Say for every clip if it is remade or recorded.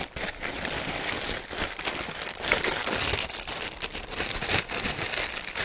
remade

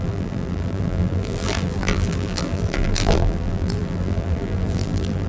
remade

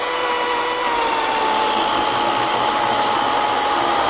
recorded